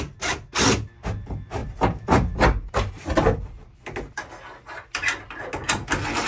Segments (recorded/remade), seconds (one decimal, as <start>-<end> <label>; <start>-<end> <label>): 0.0-1.6 recorded; 1.6-3.8 remade; 3.8-6.3 recorded